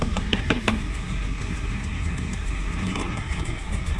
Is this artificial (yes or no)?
yes